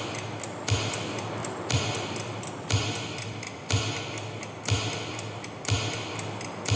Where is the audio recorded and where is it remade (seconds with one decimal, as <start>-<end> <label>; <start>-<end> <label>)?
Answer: 0.0-1.4 recorded; 1.4-4.0 remade; 4.0-6.8 recorded